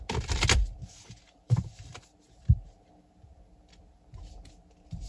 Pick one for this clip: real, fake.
real